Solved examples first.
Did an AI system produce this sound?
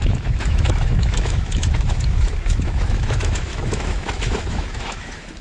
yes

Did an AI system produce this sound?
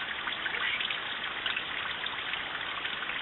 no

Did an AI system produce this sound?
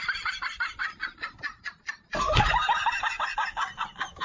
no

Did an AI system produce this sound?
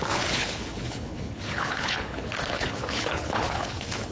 yes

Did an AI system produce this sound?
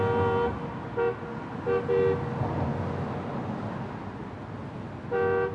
no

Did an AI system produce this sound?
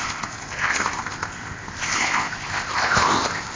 yes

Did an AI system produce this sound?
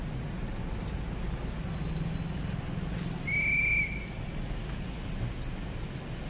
no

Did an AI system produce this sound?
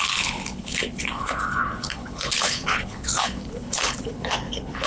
yes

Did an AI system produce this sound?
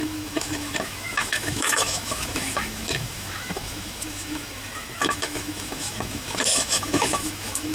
yes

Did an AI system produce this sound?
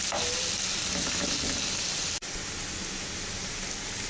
no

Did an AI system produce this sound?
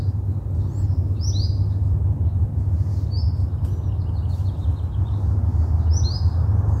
no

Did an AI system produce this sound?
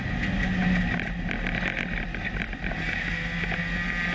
no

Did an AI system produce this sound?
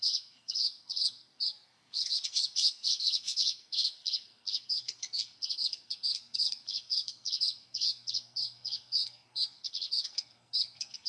yes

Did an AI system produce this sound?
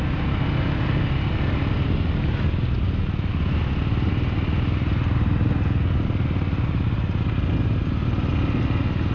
no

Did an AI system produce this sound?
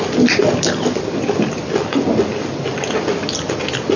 no